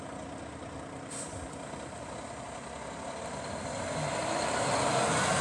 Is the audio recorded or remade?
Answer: recorded